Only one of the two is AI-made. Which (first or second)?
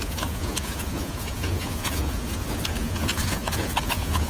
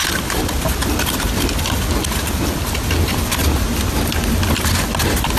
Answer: first